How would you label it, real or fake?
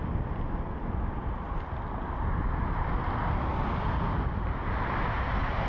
real